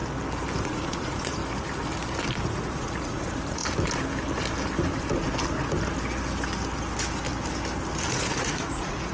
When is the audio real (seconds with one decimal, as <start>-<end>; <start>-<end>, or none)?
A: 0.0-0.6; 1.4-2.5; 3.6-8.1